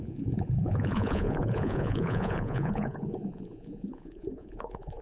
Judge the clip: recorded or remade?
remade